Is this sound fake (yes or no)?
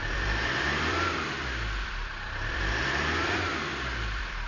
yes